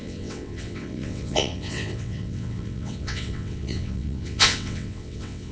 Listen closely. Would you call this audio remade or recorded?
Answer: remade